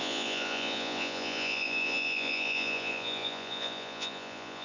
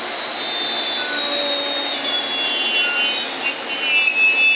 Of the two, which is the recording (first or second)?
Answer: second